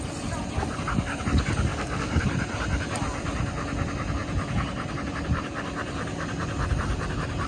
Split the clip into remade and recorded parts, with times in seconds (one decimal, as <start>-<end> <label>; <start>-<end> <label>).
0.0-1.7 recorded; 1.7-2.2 remade; 2.2-7.5 recorded